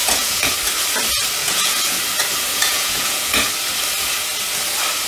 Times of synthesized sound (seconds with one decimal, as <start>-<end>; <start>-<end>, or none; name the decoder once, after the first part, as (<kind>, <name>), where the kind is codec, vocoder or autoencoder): 0.0-0.5 (vocoder, Vocos); 1.4-2.0; 2.5-3.5